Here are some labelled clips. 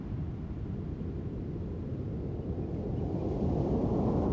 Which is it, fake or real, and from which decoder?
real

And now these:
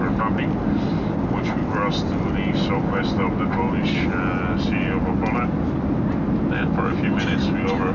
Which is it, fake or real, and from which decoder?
real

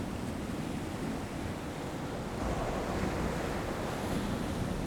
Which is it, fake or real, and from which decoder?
real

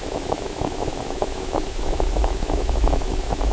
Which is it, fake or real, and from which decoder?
fake, autoencoder, DAC-VAE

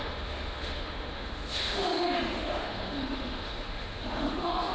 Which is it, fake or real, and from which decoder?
fake, autoencoder, DAC-VAE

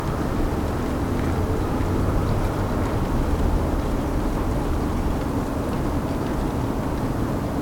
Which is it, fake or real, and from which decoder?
real